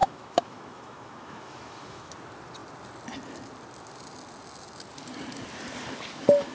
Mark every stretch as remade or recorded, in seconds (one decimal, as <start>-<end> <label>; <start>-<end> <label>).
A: 0.0-2.1 remade; 2.1-6.5 recorded